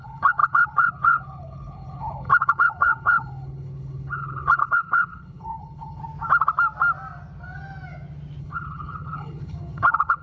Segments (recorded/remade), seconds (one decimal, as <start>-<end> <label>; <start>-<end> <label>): 0.0-6.0 remade; 6.0-8.4 recorded; 8.4-10.2 remade